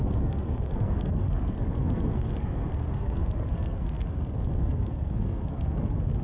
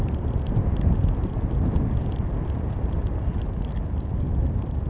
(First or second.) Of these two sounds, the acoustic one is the second